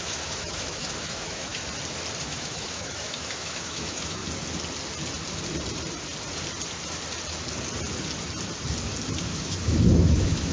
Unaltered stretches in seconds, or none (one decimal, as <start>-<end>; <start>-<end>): 1.6-2.2; 4.2-9.2